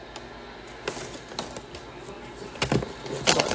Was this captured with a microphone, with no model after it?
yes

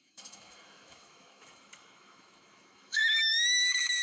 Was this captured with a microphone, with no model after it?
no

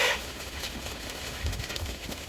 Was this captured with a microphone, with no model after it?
no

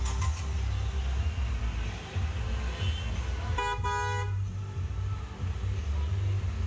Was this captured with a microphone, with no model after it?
yes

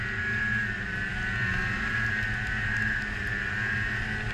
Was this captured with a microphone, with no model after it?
yes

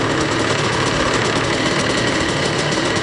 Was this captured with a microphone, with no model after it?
no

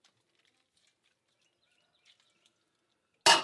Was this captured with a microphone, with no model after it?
yes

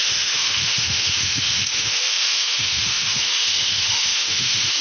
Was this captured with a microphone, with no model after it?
no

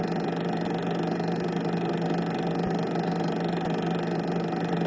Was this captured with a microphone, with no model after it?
yes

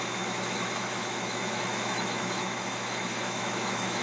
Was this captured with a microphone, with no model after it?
no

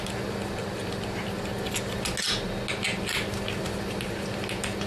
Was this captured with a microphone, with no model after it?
yes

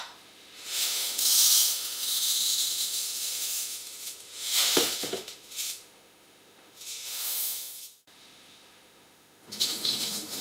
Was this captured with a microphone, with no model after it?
no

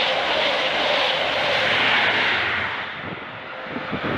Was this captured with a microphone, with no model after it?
yes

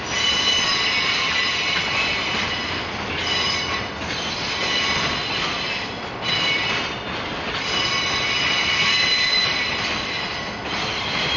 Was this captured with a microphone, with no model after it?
yes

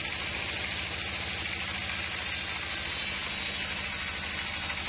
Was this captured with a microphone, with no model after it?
yes